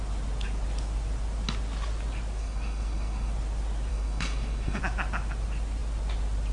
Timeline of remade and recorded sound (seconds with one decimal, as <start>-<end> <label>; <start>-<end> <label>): 0.0-2.4 recorded; 2.4-3.3 remade; 3.3-3.9 recorded; 3.9-4.8 remade; 4.8-6.5 recorded